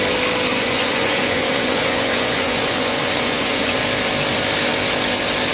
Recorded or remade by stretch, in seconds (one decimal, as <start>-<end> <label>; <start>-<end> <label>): 0.0-0.5 recorded; 0.5-3.8 remade; 3.8-5.5 recorded